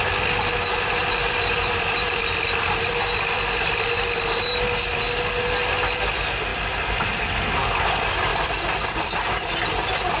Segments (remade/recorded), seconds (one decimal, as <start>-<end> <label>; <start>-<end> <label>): 0.0-1.0 recorded; 1.0-3.9 remade; 3.9-6.5 recorded; 6.5-7.2 remade; 7.2-8.3 recorded; 8.3-9.2 remade; 9.2-10.2 recorded